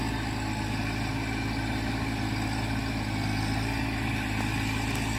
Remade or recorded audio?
recorded